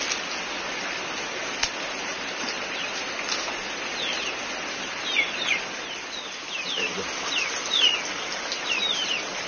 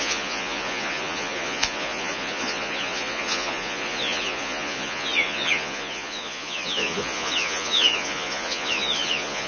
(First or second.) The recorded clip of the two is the first